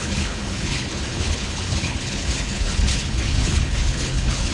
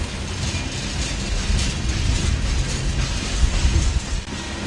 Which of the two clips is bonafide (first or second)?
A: second